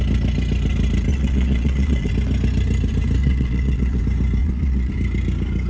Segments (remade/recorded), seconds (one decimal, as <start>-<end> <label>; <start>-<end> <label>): 0.0-1.1 recorded; 1.1-2.1 remade; 2.1-3.2 recorded; 3.2-4.0 remade; 4.0-4.4 recorded; 4.4-4.9 remade; 4.9-5.7 recorded